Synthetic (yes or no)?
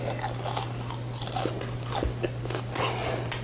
no